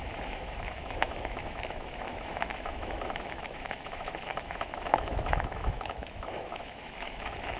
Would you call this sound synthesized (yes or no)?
yes